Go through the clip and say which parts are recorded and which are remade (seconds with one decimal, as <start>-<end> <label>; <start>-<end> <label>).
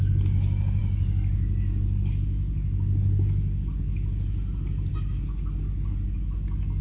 0.0-6.8 recorded